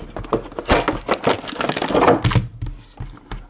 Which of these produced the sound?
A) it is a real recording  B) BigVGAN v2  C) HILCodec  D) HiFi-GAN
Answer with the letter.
A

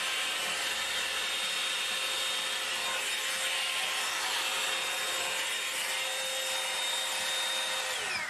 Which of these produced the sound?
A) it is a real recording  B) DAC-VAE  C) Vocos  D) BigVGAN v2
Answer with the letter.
A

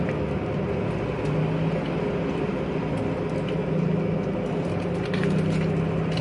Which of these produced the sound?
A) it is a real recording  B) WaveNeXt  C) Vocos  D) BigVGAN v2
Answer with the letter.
A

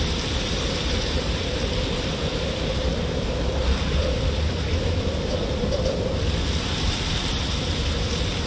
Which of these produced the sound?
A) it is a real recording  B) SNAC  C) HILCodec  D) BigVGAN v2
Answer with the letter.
D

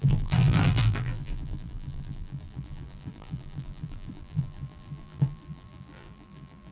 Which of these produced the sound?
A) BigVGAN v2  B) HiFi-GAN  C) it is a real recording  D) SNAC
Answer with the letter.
A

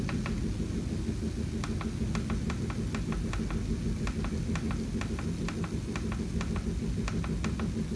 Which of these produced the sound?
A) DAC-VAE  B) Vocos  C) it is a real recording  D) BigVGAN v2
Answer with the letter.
C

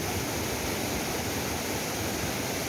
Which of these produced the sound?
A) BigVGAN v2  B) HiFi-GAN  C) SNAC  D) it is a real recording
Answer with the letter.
A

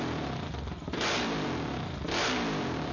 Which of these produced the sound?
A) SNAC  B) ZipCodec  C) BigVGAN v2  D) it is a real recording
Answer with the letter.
C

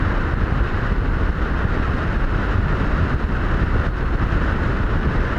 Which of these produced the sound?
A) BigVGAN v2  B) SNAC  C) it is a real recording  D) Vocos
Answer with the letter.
C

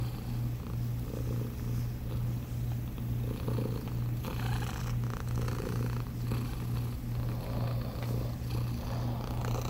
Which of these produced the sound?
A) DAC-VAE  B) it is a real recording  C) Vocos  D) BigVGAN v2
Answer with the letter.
B